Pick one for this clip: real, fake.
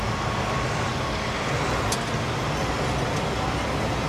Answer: real